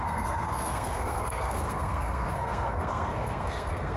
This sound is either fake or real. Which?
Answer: fake